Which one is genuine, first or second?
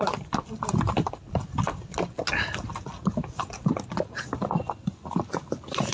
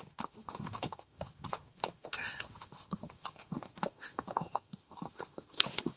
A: first